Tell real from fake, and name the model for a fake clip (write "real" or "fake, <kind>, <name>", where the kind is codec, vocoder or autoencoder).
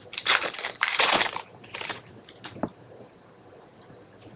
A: fake, vocoder, BigVGAN v2